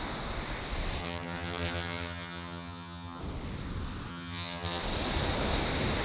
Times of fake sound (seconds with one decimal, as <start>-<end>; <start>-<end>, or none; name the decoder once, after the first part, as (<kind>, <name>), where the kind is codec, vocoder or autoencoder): 1.0-3.2 (vocoder, HiFi-GAN); 4.1-4.8